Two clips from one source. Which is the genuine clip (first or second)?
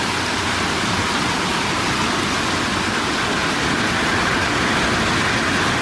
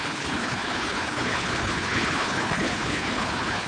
first